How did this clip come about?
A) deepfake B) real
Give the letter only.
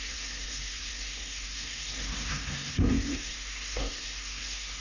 A